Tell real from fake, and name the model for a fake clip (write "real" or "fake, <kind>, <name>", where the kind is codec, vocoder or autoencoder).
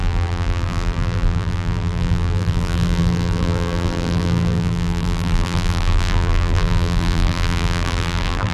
fake, vocoder, BigVGAN v2